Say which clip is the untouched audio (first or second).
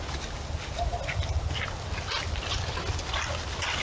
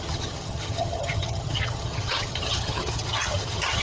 first